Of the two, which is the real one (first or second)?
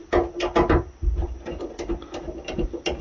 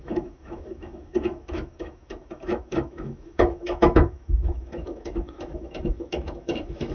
first